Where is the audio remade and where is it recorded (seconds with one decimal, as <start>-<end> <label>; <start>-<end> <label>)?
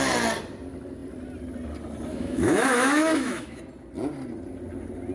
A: 0.0-2.1 recorded; 2.1-3.6 remade; 3.6-5.1 recorded